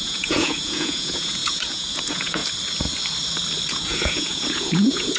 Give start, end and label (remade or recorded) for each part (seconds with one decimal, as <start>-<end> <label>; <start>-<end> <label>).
0.0-2.4 remade; 2.4-3.7 recorded; 3.7-5.2 remade